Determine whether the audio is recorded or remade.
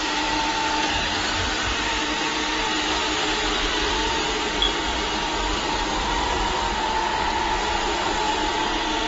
recorded